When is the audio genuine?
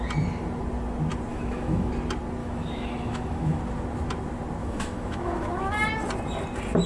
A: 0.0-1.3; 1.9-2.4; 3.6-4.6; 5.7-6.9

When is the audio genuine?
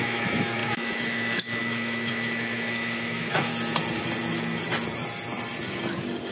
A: 3.5-6.3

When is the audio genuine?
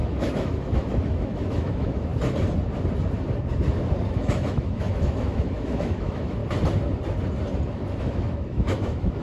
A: 2.1-4.1; 6.4-8.0